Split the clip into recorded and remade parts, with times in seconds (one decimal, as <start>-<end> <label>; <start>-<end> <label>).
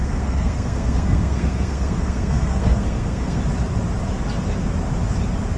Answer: 0.0-3.4 remade; 3.4-5.6 recorded